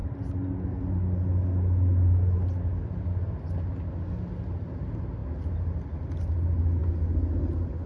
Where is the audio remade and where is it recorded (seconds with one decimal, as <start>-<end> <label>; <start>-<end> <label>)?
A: 0.0-7.9 recorded